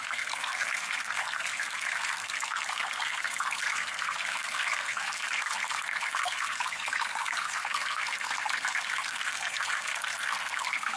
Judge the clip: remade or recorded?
remade